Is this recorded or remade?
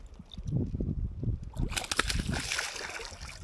recorded